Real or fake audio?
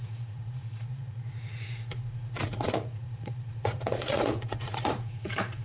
fake